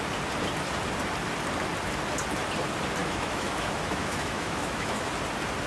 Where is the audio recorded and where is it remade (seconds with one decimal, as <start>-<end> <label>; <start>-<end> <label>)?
0.0-3.0 recorded; 3.0-5.1 remade; 5.1-5.7 recorded